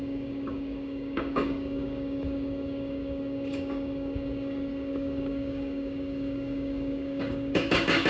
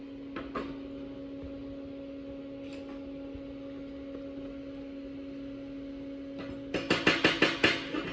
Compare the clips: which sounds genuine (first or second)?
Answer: second